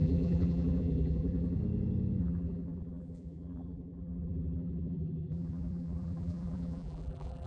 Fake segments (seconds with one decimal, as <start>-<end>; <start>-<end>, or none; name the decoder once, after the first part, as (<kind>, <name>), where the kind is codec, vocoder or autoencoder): 0.0-1.6 (vocoder, BigVGAN v2); 2.2-7.5